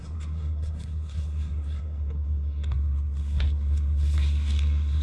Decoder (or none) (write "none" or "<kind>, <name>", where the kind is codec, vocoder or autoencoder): codec, SNAC